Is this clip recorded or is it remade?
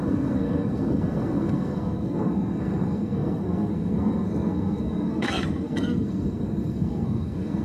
remade